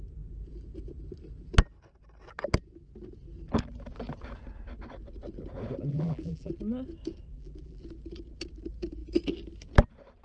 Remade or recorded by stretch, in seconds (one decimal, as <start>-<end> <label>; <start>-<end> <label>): 0.0-5.9 recorded; 5.9-6.5 remade; 6.5-7.3 recorded; 7.3-7.8 remade; 7.8-10.2 recorded